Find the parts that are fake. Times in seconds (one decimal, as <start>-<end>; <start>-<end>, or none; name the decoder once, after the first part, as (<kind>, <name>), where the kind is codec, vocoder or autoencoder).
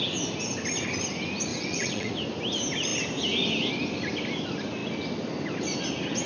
1.5-2.1 (vocoder, WaveNeXt)